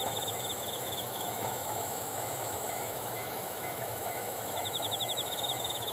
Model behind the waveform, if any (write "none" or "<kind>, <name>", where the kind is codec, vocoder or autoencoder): autoencoder, DAC-VAE